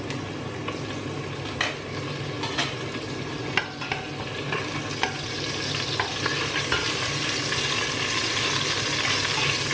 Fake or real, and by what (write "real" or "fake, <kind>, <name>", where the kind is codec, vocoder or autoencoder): real